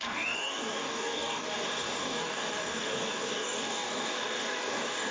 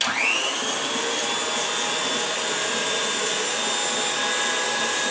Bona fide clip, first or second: second